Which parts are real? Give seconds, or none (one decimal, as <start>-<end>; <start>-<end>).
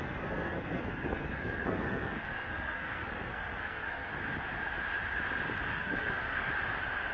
4.1-5.7; 6.5-7.1